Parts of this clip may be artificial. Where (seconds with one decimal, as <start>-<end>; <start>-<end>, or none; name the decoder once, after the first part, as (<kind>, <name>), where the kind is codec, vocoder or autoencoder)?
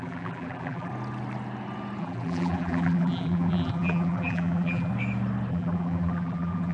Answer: 0.0-0.9 (vocoder, BigVGAN v2); 2.0-4.9; 5.5-6.7